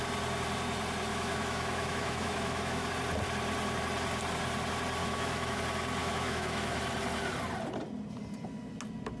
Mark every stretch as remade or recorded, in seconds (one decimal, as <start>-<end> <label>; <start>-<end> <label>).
0.0-1.1 recorded; 1.1-2.9 remade; 2.9-5.0 recorded; 5.0-5.6 remade; 5.6-6.0 recorded; 6.0-6.8 remade; 6.8-9.2 recorded